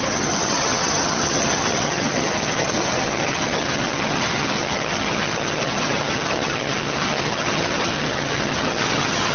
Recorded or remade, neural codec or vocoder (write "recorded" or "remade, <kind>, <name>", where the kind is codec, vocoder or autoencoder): remade, vocoder, HiFi-GAN